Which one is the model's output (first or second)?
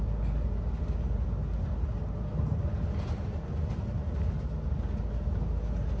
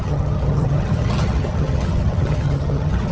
second